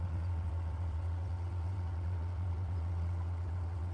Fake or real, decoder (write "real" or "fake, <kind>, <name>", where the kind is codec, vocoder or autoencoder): fake, vocoder, WaveNeXt